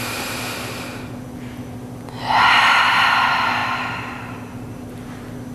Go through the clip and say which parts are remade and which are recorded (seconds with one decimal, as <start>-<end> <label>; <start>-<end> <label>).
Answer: 0.0-5.5 recorded